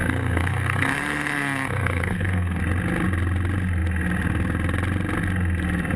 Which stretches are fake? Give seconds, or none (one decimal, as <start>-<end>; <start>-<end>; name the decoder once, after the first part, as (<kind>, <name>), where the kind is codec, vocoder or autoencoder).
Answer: 0.0-2.6 (codec, SNAC)